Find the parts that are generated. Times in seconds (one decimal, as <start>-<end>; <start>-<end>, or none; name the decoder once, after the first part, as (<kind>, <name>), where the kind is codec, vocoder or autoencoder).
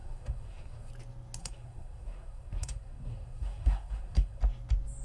0.0-0.9 (codec, SNAC); 1.4-4.4